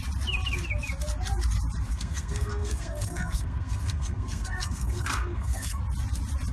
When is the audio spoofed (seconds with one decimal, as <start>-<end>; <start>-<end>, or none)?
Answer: 1.9-5.8